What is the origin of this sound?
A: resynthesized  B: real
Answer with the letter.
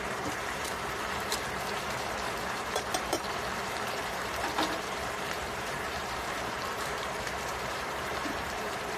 A